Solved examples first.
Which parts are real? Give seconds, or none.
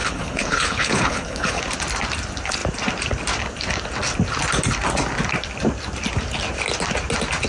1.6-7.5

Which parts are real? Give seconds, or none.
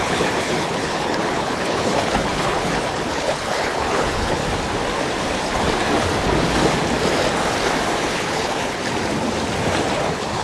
4.4-8.1; 8.8-9.9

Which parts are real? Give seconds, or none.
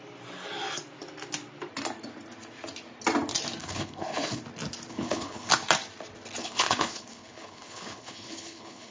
0.0-3.6; 4.4-4.9; 5.5-6.4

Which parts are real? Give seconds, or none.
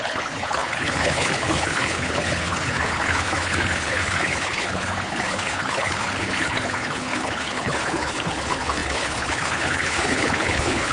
none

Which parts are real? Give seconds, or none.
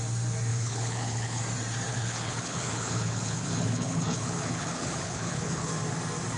0.0-0.5; 1.4-1.9; 5.7-6.4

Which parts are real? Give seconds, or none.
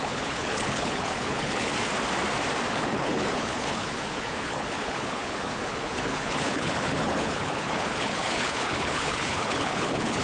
1.7-2.7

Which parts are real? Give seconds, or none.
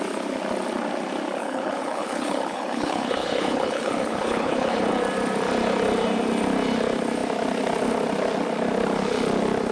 0.0-1.4; 4.9-9.7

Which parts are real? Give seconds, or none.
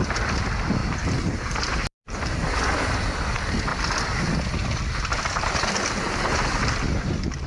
0.0-7.5